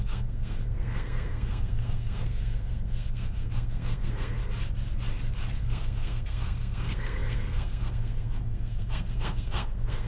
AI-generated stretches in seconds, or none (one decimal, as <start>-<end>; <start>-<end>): 0.0-4.4; 5.6-10.1